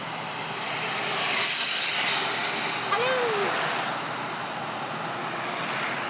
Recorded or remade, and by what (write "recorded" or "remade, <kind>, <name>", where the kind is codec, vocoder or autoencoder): recorded